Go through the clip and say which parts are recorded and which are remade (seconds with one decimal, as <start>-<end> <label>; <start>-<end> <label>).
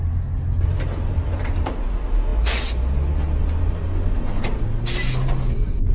0.0-5.9 recorded